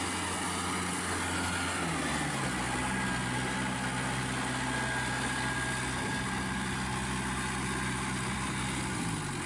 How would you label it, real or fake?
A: real